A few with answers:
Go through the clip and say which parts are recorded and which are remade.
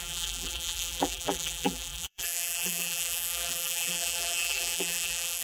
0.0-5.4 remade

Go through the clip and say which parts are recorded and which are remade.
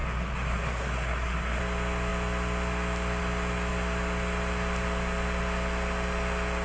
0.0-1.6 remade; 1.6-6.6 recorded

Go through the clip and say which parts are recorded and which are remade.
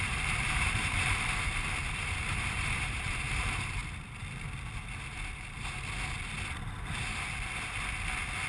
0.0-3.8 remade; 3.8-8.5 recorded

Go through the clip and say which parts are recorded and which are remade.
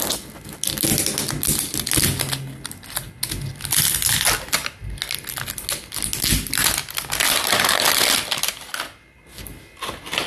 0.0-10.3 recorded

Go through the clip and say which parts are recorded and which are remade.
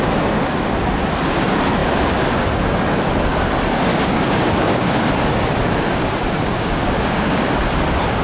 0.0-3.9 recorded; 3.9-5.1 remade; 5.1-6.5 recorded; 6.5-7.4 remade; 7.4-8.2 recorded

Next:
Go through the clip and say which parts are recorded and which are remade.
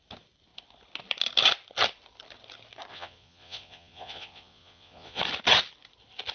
0.0-2.9 recorded; 2.9-5.2 remade; 5.2-6.3 recorded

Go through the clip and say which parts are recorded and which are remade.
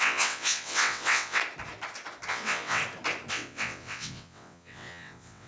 0.0-1.4 remade; 1.4-2.3 recorded; 2.3-2.8 remade; 2.8-3.3 recorded; 3.3-5.5 remade